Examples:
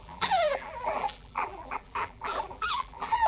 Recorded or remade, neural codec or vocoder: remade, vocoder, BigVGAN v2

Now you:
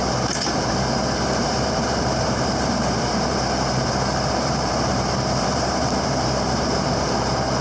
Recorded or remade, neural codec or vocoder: remade, vocoder, BigVGAN v2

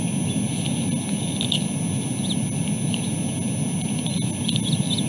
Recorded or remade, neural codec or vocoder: recorded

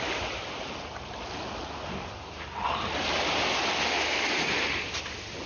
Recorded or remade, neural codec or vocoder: recorded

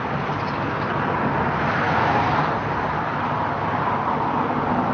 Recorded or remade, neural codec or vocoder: recorded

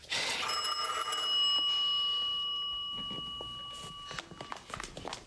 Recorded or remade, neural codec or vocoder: recorded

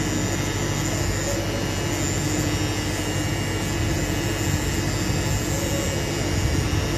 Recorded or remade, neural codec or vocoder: recorded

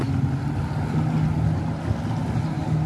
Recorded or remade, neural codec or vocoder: recorded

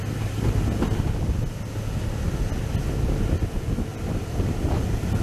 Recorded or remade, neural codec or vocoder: recorded